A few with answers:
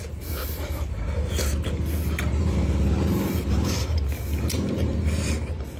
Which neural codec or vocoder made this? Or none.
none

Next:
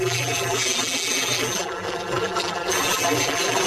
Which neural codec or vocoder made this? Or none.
vocoder, BigVGAN v2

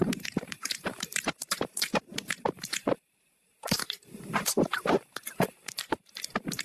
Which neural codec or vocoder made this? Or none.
vocoder, BigVGAN v2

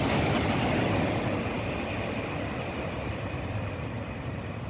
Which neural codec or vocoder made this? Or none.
vocoder, BigVGAN v2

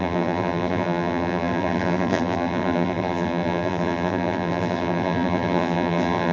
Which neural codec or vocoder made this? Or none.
vocoder, BigVGAN v2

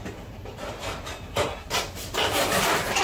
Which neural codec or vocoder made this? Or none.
vocoder, BigVGAN v2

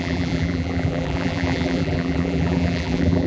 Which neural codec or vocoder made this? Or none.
vocoder, BigVGAN v2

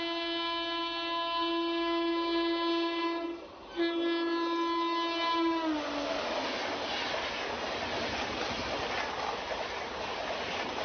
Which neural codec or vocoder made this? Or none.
none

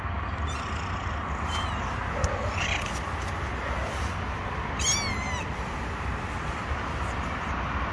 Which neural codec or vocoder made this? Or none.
none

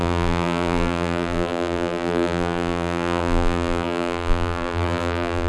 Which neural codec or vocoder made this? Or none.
vocoder, BigVGAN v2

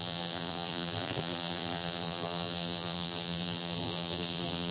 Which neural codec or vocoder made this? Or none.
vocoder, BigVGAN v2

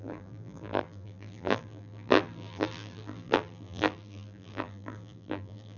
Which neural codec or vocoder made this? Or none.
vocoder, BigVGAN v2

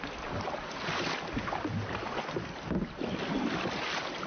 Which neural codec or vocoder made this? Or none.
none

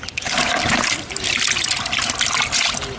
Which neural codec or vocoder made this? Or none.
none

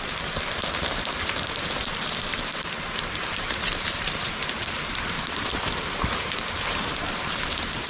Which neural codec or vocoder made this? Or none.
vocoder, BigVGAN v2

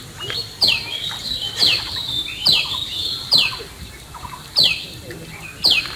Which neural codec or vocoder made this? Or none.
vocoder, BigVGAN v2